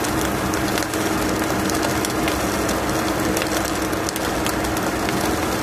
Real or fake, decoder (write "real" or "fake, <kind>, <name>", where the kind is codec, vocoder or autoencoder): real